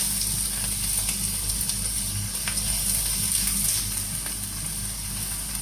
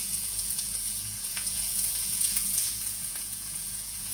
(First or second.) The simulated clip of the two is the second